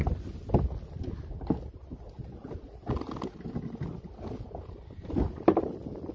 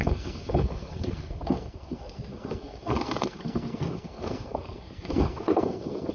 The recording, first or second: first